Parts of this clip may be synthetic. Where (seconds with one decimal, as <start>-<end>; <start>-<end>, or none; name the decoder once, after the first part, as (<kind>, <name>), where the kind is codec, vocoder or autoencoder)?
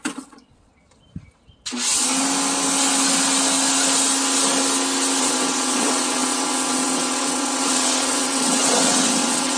0.0-0.7 (vocoder, WaveNeXt); 5.2-9.6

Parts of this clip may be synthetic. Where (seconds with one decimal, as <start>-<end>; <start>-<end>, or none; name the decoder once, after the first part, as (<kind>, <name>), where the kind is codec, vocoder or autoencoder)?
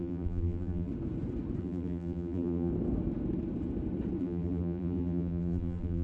0.0-0.9 (vocoder, BigVGAN v2); 1.6-2.7; 4.2-6.0